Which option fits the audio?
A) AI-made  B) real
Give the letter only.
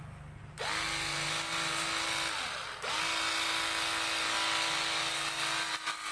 B